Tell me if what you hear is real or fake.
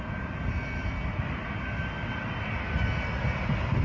real